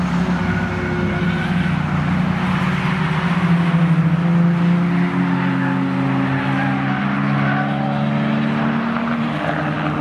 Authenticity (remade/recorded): recorded